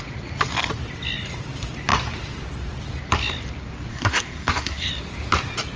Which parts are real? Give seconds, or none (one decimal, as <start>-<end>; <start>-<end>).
0.0-3.9; 4.9-5.8